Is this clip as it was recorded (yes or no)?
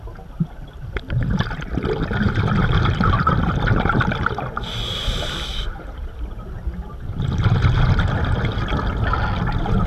yes